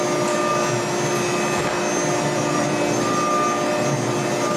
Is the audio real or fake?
real